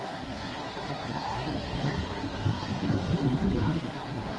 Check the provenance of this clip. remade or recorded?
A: remade